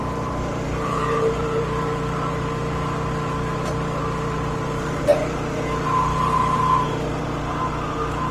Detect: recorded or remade remade